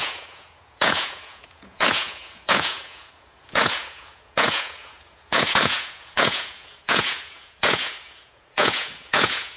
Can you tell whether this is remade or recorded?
remade